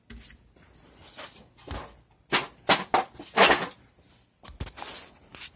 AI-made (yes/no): no